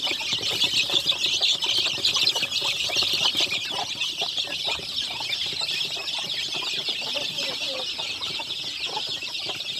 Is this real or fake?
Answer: real